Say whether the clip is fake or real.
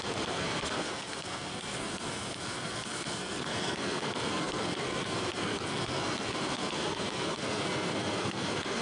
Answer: fake